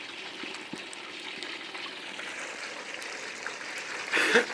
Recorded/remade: recorded